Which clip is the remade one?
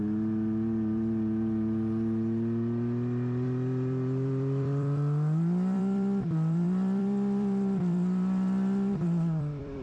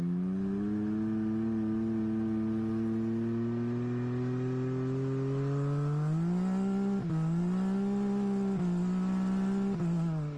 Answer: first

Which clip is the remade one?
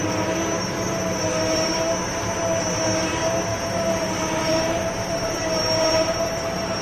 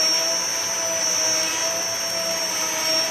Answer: first